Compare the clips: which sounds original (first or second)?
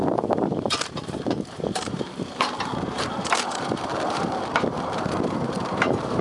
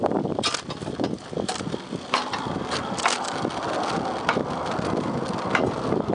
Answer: second